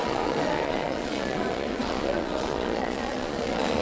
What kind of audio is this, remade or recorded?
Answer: remade